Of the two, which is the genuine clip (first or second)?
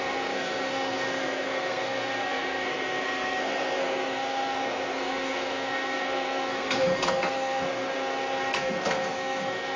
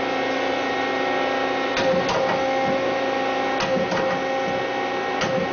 second